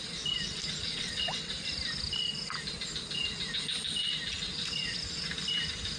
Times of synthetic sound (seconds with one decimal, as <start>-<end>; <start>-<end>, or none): 0.9-1.5